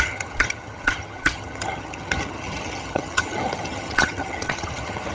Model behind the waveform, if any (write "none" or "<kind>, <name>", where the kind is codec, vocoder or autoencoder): vocoder, HiFi-GAN